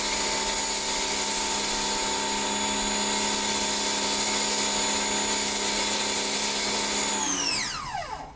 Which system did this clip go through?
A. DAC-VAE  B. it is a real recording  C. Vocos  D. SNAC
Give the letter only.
B